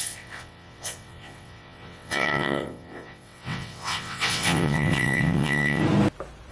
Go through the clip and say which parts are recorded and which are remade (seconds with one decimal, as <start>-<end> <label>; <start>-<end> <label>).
0.0-5.8 remade; 5.8-6.5 recorded